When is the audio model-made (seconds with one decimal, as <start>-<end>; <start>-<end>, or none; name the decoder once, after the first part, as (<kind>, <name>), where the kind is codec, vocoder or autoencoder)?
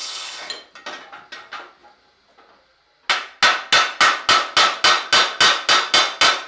0.0-0.5 (codec, HILCodec)